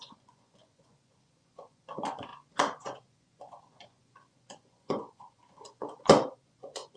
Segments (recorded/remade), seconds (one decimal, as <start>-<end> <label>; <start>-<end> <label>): 0.0-7.0 remade